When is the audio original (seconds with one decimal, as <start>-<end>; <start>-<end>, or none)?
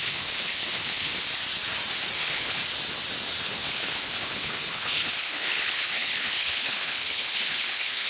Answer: 1.1-2.2; 2.6-3.4